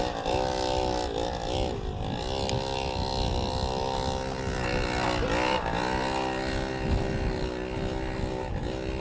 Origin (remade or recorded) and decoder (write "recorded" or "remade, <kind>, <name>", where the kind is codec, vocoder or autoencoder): recorded